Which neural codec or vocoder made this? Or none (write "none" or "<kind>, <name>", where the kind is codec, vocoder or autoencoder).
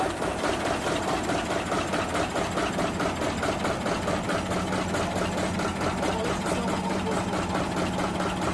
none